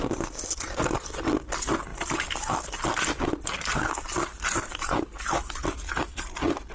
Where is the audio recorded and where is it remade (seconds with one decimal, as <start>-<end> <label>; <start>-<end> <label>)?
0.0-6.7 recorded